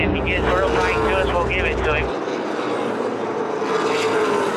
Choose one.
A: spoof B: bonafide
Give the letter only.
B